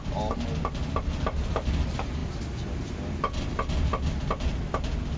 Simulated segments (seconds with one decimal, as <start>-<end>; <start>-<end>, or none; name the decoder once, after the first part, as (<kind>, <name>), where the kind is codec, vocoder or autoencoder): none